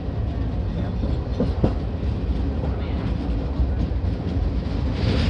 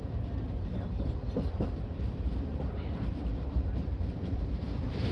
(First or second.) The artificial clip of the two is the second